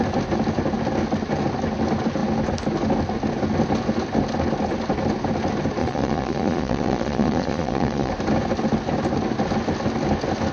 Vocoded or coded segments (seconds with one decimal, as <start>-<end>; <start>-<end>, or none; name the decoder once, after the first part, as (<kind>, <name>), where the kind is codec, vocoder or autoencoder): 5.8-8.1 (vocoder, Vocos)